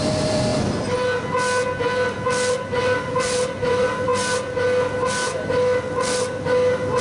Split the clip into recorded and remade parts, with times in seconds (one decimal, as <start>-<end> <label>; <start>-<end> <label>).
0.0-0.5 remade; 0.5-2.8 recorded; 2.8-4.1 remade; 4.1-7.0 recorded